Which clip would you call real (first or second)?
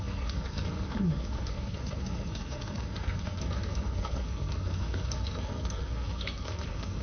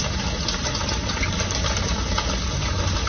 second